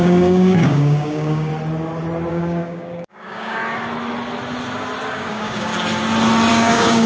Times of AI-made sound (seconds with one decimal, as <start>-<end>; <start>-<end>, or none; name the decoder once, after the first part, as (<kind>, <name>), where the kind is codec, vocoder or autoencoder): 0.0-1.5 (codec, DAC); 2.3-3.6; 5.1-5.7; 6.5-7.1